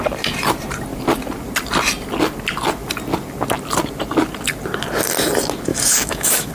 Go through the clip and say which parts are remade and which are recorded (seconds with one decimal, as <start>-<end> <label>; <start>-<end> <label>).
0.0-5.7 recorded; 5.7-6.5 remade